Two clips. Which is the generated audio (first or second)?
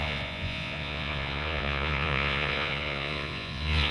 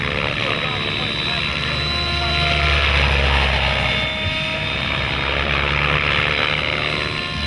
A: first